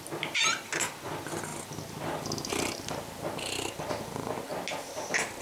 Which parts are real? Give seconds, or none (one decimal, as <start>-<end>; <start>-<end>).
0.0-5.4